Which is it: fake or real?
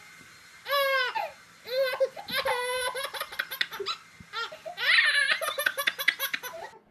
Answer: real